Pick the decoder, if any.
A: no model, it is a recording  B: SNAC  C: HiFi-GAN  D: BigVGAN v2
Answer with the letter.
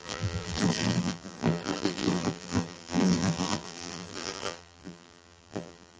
D